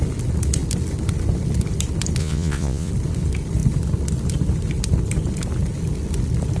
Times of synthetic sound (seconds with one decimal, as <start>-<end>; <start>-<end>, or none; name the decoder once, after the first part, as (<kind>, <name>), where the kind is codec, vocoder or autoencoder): 2.2-2.9 (vocoder, Vocos)